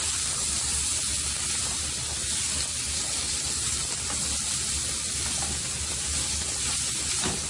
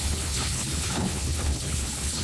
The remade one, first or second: second